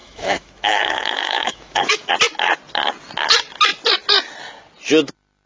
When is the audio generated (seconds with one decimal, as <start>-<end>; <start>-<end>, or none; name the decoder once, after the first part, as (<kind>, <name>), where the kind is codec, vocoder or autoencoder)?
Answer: 0.0-2.1 (autoencoder, DAC-VAE)